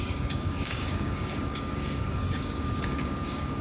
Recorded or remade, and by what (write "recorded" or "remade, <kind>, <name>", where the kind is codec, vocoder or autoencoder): remade, codec, DAC